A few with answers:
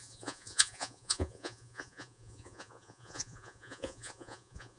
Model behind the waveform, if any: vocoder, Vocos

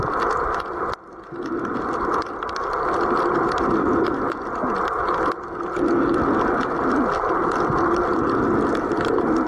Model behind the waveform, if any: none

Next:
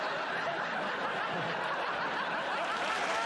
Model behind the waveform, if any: none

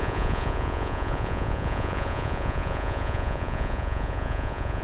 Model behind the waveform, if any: vocoder, Vocos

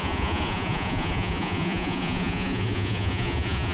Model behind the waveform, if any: vocoder, Vocos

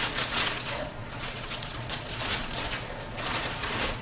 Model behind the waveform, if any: vocoder, Vocos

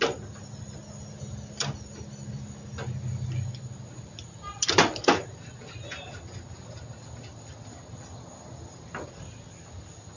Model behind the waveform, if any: none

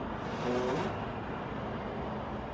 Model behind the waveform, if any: none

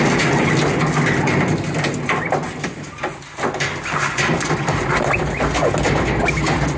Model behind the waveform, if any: none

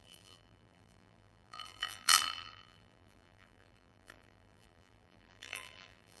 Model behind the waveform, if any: vocoder, BigVGAN v2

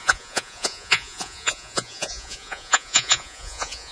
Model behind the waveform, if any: vocoder, Vocos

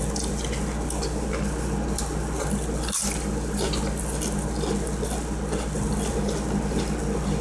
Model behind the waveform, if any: none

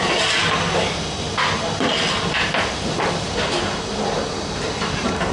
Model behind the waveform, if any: none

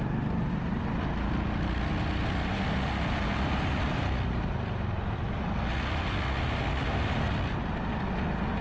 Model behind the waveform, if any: none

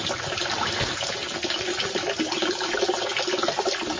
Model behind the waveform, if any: none